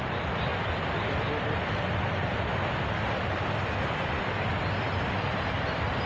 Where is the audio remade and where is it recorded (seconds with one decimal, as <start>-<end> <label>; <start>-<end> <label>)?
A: 0.0-6.1 recorded